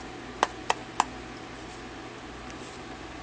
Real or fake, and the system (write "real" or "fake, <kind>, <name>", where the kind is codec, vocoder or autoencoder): real